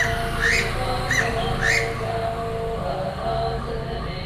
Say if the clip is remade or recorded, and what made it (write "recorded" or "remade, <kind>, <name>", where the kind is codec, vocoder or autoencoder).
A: recorded